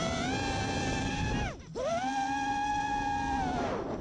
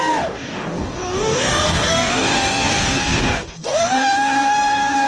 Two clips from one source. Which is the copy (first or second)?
second